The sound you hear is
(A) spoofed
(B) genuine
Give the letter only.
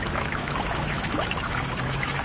A